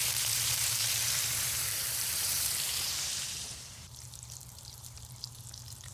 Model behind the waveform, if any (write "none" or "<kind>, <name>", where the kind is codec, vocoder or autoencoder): vocoder, BigVGAN v2